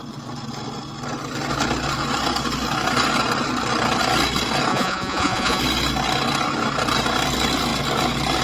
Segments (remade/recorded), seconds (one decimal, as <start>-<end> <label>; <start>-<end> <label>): 0.0-4.7 recorded; 4.7-5.6 remade; 5.6-8.4 recorded